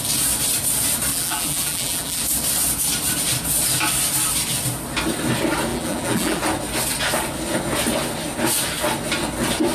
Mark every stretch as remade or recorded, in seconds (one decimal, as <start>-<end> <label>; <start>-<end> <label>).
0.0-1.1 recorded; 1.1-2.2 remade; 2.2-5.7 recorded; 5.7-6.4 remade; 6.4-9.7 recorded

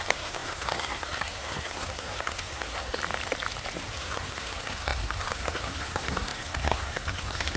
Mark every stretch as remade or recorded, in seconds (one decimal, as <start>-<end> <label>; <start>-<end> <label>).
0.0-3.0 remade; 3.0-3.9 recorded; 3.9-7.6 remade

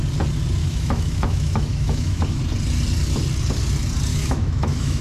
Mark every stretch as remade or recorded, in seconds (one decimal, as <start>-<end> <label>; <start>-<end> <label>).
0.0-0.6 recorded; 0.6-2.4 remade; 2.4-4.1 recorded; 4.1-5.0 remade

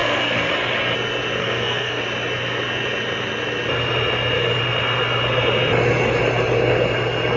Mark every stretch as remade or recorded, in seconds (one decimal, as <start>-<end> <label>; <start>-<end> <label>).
0.0-0.5 remade; 0.5-1.4 recorded; 1.4-2.0 remade; 2.0-7.4 recorded

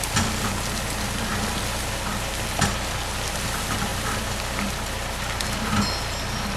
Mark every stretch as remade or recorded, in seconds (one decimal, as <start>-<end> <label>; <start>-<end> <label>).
0.0-6.6 recorded